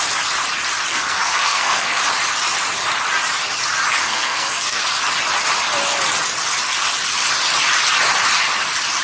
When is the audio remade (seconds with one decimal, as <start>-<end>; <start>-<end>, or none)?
0.9-2.0; 4.0-4.8